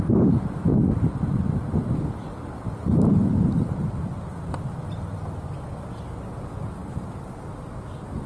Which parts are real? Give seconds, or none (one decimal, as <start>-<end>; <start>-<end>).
0.0-0.7; 1.9-3.2; 4.7-8.3